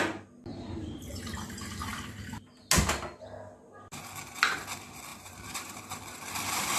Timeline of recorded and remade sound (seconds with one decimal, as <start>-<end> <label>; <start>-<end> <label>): 0.0-0.5 recorded; 0.5-1.2 remade; 1.2-5.1 recorded; 5.1-5.8 remade; 5.8-6.8 recorded